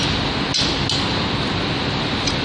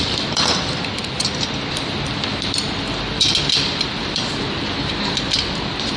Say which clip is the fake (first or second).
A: second